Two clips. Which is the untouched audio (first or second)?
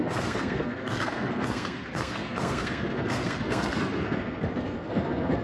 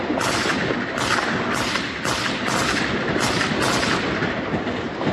second